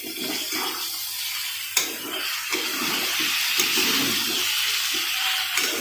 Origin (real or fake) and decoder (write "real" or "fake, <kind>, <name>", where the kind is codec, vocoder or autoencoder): real